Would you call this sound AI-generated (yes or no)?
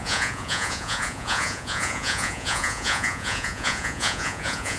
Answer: yes